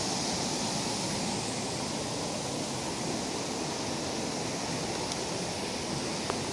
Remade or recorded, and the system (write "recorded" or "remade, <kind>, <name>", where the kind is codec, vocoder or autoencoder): recorded